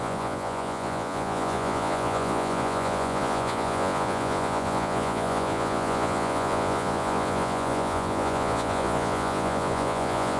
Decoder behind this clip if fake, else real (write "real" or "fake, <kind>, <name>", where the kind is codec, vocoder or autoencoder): fake, vocoder, Vocos